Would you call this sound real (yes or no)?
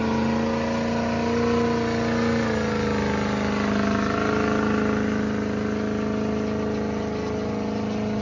yes